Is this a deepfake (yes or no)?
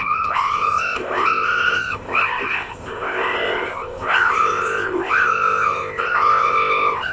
yes